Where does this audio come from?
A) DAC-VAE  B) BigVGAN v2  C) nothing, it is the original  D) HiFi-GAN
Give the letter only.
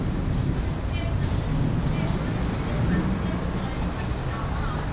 C